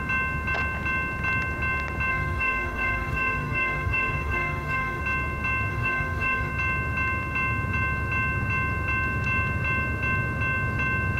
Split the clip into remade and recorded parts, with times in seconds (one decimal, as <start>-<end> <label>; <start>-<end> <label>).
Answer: 0.0-2.1 recorded; 2.1-5.0 remade; 5.0-5.7 recorded; 5.7-6.5 remade; 6.5-11.2 recorded

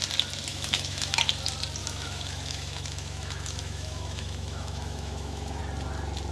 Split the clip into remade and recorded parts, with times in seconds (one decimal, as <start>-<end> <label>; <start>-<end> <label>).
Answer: 0.0-0.5 recorded; 0.5-1.2 remade; 1.2-1.8 recorded; 1.8-5.6 remade; 5.6-6.3 recorded

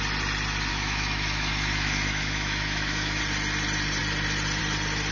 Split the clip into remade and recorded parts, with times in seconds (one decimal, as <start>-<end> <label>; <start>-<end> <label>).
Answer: 0.0-0.7 recorded; 0.7-3.2 remade; 3.2-5.1 recorded

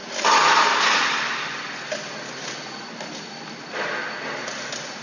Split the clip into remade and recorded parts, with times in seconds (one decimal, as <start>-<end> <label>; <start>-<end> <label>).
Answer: 0.0-5.0 recorded

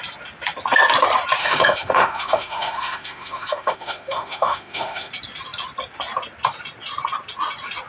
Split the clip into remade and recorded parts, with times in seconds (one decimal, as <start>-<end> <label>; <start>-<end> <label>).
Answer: 0.0-1.4 recorded; 1.4-5.1 remade; 5.1-7.9 recorded